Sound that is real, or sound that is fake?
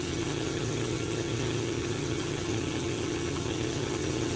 fake